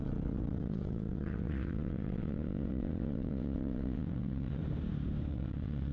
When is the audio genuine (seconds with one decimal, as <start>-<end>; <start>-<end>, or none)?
4.6-5.3